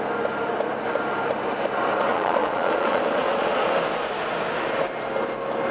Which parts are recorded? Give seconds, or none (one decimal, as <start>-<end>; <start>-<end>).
0.0-2.1; 3.7-5.7

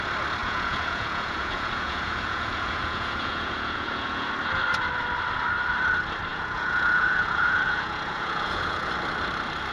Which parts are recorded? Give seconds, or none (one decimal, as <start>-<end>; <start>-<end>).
0.0-0.4; 4.3-6.3; 8.9-9.7

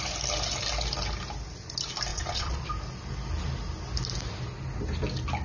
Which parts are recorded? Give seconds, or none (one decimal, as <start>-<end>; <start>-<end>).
0.0-2.1; 2.7-5.4

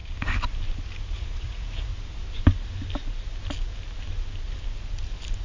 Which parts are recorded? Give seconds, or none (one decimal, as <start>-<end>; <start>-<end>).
0.0-1.1; 1.9-5.4

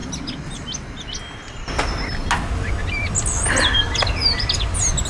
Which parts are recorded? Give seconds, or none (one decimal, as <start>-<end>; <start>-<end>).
0.0-5.1